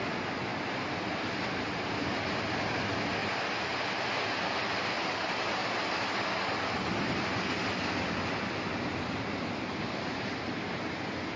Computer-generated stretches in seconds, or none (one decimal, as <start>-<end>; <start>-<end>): 3.2-4.1; 5.6-7.3